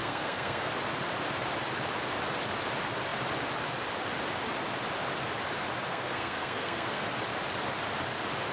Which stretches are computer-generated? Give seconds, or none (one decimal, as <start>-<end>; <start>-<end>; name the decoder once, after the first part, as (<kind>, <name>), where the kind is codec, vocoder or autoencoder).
0.0-0.7 (codec, SNAC); 5.9-7.0